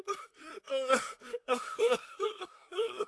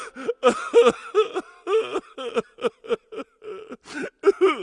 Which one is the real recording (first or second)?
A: second